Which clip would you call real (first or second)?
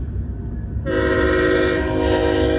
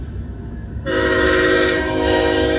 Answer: first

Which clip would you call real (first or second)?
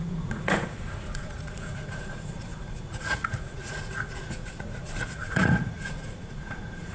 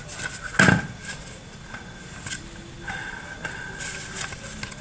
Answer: second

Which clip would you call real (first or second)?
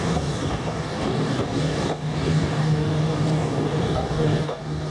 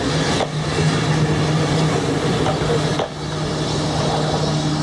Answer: second